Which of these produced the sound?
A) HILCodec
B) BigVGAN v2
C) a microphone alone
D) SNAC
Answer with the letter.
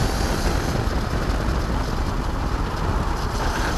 C